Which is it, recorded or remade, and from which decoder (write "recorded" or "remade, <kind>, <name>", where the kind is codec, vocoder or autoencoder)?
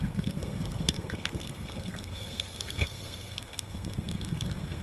remade, codec, SNAC